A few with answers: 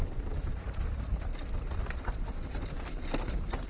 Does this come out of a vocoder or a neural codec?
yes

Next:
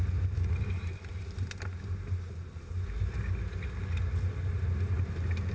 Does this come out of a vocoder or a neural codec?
no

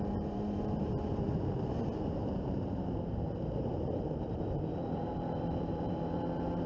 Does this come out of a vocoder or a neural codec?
yes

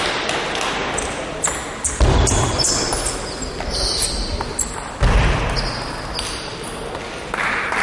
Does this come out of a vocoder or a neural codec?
no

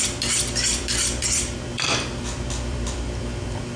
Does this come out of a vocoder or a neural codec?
yes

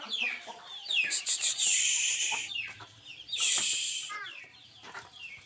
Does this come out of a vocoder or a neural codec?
yes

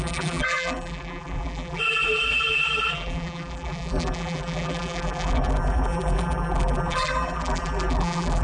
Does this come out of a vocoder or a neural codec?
yes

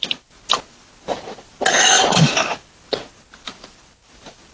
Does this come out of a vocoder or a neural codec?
no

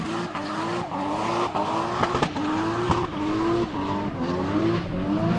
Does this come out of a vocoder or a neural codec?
no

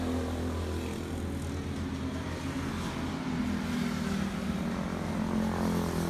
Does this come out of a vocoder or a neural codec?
no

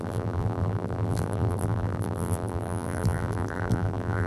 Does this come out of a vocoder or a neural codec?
yes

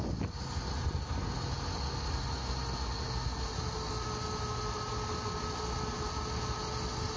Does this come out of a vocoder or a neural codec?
no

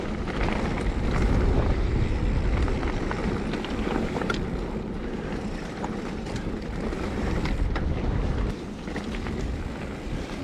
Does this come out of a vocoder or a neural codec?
yes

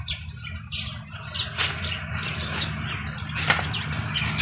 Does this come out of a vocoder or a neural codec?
no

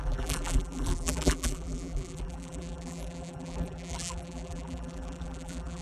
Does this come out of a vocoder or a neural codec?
yes